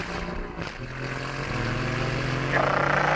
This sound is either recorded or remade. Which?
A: recorded